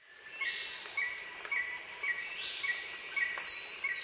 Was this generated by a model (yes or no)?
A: no